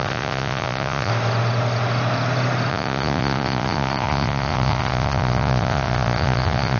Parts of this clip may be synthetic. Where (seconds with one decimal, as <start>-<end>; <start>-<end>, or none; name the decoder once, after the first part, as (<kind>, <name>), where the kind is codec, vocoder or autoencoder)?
0.0-1.1 (vocoder, Vocos); 2.7-6.8